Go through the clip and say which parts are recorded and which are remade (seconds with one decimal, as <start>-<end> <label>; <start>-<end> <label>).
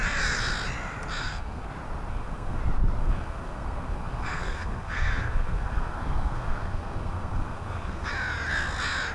0.0-1.2 recorded; 1.2-1.7 remade; 1.7-2.1 recorded; 2.1-2.6 remade; 2.6-3.0 recorded; 3.0-8.1 remade; 8.1-9.1 recorded